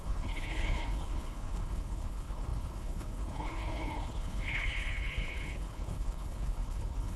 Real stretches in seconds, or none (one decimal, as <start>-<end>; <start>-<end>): none